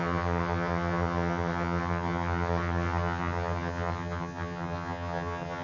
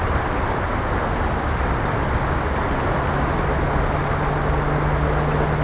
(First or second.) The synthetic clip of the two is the first